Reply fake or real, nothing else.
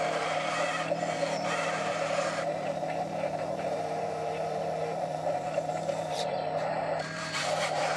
fake